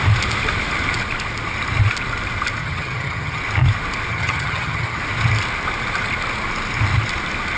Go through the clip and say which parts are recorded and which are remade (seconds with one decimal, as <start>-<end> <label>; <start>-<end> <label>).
0.0-2.6 recorded; 2.6-3.4 remade; 3.4-4.1 recorded; 4.1-5.0 remade; 5.0-7.6 recorded